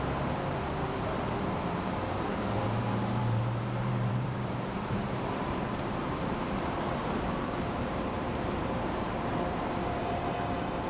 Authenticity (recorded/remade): remade